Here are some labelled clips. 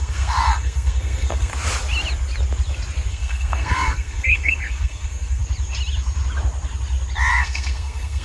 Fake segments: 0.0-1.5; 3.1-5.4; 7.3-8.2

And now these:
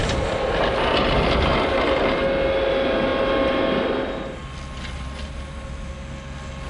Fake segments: none